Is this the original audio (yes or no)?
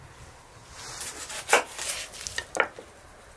yes